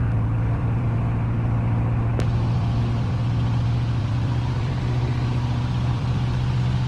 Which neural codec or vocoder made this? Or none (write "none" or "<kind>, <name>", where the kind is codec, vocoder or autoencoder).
vocoder, BigVGAN v2